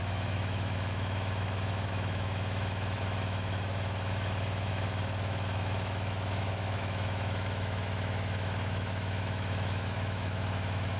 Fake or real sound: fake